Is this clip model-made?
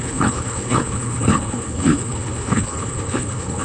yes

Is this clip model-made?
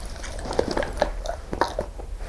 no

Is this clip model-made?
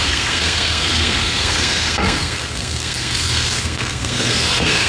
yes